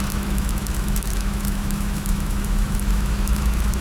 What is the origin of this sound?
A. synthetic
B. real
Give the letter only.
A